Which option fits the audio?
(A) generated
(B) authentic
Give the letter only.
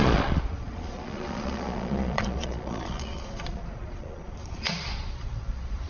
A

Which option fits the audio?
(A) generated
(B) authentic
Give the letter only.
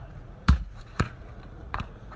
A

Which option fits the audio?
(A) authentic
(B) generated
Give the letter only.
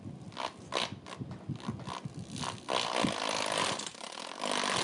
A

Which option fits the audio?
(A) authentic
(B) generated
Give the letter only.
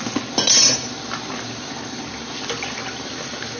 A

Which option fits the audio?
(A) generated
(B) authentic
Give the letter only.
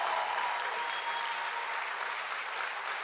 B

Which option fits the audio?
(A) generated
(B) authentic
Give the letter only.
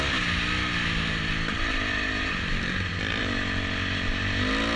B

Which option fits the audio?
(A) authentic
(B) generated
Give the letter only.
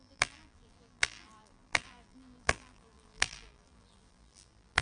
B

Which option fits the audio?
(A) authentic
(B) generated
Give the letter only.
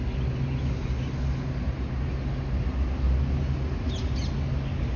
A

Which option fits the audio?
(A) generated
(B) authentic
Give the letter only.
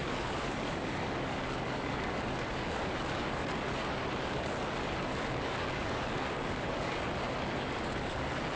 A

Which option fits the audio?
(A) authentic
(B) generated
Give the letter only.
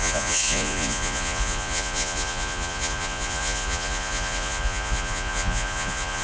B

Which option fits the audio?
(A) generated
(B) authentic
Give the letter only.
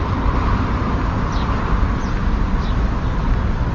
B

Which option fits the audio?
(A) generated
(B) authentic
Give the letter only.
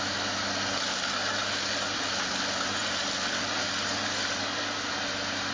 B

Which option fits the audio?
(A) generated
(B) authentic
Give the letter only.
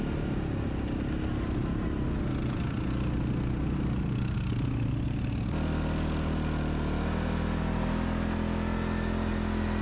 B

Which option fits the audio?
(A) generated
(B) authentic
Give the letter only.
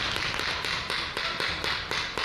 B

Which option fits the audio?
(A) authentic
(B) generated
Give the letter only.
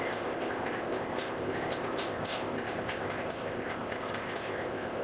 B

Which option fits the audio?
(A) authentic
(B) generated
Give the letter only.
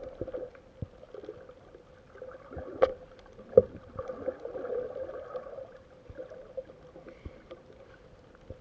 A